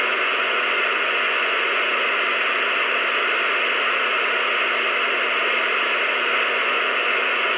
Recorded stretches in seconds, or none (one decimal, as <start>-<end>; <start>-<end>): 1.9-6.5